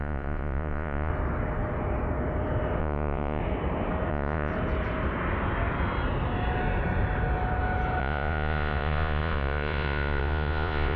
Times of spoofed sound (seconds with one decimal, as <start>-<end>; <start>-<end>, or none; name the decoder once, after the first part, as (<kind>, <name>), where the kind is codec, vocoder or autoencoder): 0.0-1.1 (vocoder, Vocos); 2.8-3.4; 4.1-4.5; 8.0-11.0